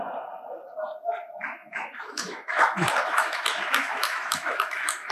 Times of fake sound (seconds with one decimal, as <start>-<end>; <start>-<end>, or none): 1.6-5.1